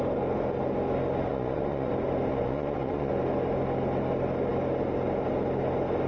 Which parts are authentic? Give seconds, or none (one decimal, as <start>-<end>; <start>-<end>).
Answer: 0.0-1.3; 1.9-2.3; 3.1-6.1